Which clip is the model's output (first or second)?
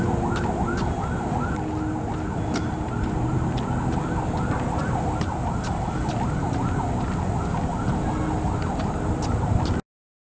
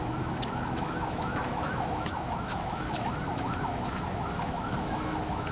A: second